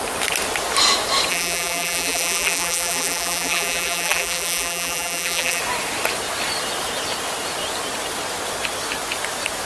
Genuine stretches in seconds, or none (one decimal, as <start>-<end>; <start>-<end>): 0.0-1.3; 5.6-9.7